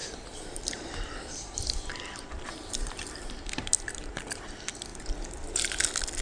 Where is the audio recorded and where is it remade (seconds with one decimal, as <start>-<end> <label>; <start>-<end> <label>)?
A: 0.0-3.7 remade; 3.7-4.9 recorded; 4.9-5.8 remade; 5.8-6.2 recorded